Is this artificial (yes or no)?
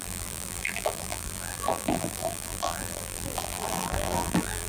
yes